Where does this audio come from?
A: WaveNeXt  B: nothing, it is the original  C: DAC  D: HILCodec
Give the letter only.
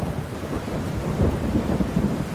B